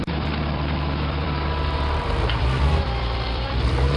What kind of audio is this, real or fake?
fake